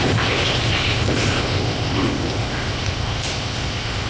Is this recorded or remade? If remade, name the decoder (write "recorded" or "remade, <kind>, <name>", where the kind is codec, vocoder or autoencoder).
remade, codec, ZipCodec